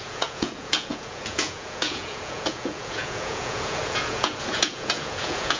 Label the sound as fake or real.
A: fake